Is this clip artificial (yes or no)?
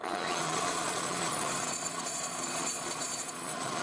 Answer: yes